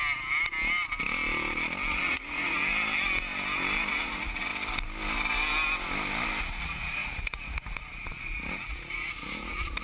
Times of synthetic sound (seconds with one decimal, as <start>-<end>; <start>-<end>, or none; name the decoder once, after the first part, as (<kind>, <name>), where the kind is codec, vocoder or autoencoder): 1.9-2.6 (vocoder, Vocos); 3.9-4.5; 6.4-9.8